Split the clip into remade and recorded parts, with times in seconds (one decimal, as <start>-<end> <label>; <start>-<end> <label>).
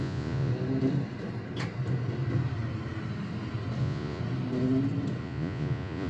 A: 0.0-0.5 remade; 0.5-3.8 recorded; 3.8-4.2 remade; 4.2-5.2 recorded; 5.2-6.1 remade